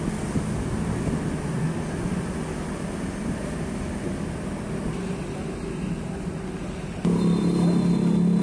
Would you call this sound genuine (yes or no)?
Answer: yes